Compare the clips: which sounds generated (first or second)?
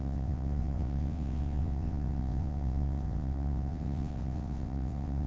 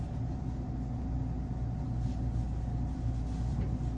first